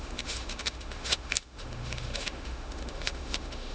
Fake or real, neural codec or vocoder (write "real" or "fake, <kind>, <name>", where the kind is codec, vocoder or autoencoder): fake, autoencoder, DAC-VAE